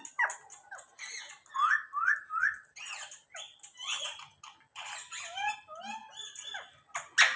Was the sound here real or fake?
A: real